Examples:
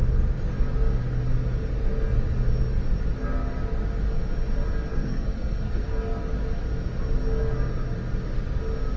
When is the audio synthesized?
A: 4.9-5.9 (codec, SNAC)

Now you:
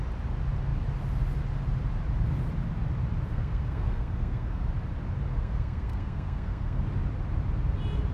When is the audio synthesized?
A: 3.3-4.7 (codec, SNAC); 5.3-6.8

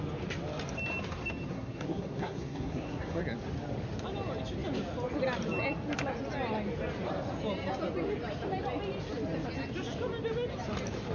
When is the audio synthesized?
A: 1.5-3.2 (codec, SNAC)

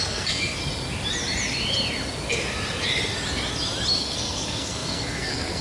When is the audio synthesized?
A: 0.0-0.6 (codec, SNAC); 4.0-5.6